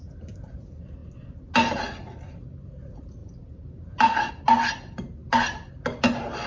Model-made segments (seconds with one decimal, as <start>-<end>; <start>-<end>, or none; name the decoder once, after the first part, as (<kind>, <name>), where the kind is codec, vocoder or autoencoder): none